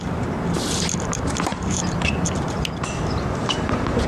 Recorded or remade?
remade